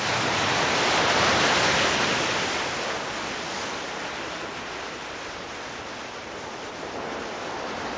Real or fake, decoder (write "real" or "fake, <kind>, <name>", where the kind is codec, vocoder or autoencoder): real